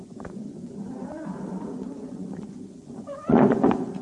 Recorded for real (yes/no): no